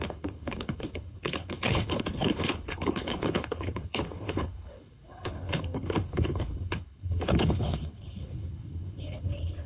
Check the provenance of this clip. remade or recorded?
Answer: remade